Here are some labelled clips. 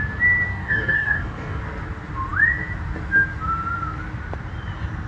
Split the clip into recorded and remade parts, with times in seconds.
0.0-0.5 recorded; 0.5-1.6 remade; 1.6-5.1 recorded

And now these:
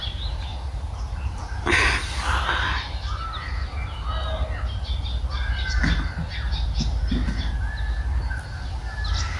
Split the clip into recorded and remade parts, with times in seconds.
0.0-0.5 recorded; 0.5-1.4 remade; 1.4-9.4 recorded

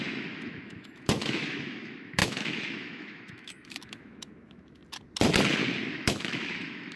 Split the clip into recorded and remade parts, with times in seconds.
0.0-4.8 remade; 4.8-5.9 recorded; 5.9-7.0 remade

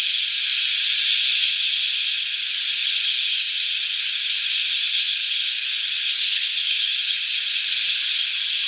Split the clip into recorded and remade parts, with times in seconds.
0.0-6.0 recorded; 6.0-6.9 remade; 6.9-8.7 recorded

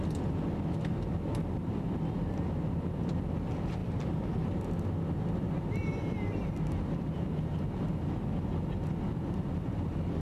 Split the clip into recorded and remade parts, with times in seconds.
0.0-3.8 recorded; 3.8-4.6 remade; 4.6-5.8 recorded; 5.8-6.5 remade; 6.5-10.2 recorded

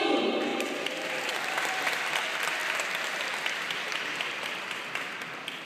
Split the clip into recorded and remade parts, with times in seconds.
0.0-0.5 recorded; 0.5-1.1 remade; 1.1-2.6 recorded; 2.6-4.9 remade; 4.9-5.6 recorded

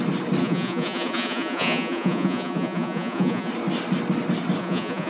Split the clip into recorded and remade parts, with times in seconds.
0.0-0.4 recorded; 0.4-3.5 remade; 3.5-4.6 recorded; 4.6-5.1 remade